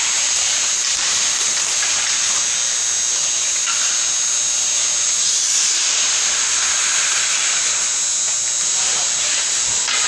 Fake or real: real